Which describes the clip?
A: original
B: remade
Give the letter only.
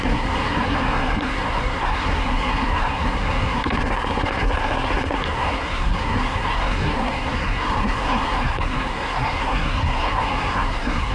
B